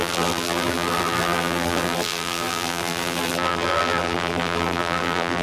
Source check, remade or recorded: remade